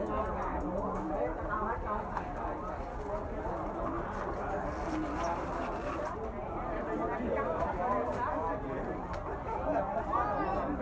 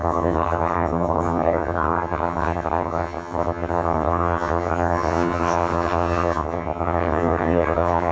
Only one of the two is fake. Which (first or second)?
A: second